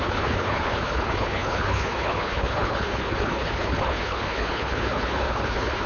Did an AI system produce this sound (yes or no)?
yes